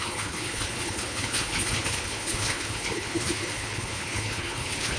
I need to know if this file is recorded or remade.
remade